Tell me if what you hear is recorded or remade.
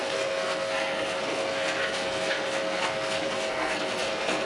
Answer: remade